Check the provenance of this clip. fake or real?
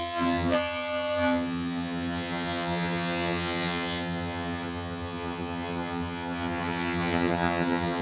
fake